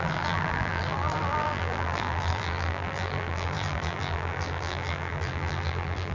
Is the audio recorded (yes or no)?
no